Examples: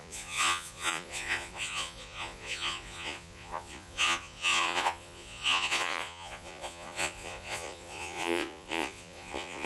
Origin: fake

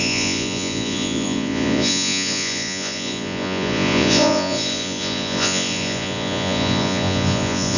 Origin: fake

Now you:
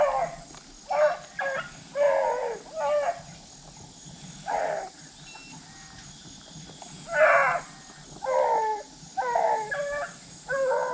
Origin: real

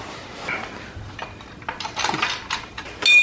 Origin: real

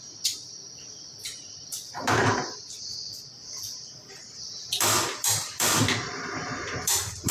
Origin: fake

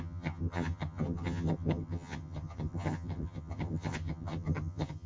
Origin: fake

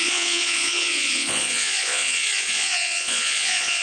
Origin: fake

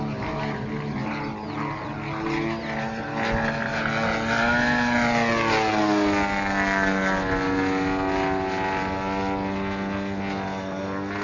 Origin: real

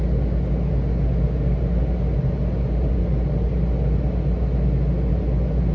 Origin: real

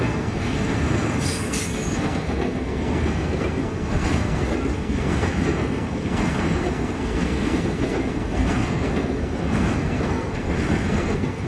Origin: fake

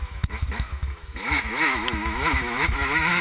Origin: fake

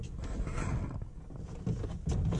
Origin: real